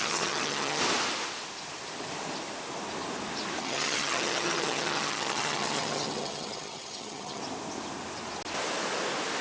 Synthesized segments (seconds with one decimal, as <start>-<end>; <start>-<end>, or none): 0.0-0.8; 3.6-7.4